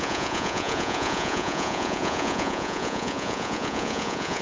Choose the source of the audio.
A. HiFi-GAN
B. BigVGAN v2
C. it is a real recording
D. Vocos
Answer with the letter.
D